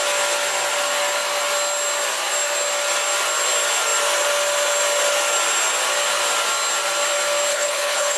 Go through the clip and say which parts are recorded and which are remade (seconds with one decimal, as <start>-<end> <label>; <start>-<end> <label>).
0.0-7.5 recorded; 7.5-8.2 remade